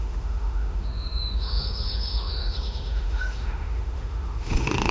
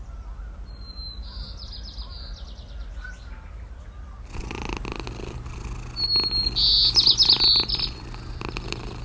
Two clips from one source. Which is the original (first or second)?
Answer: second